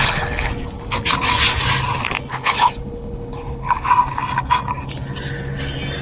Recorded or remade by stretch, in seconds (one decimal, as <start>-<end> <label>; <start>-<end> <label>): 0.0-0.5 remade; 0.5-2.3 recorded; 2.3-3.9 remade; 3.9-6.0 recorded